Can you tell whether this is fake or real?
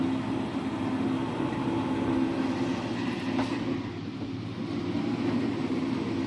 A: real